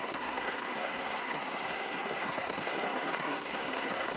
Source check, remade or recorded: remade